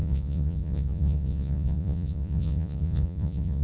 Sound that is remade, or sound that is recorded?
remade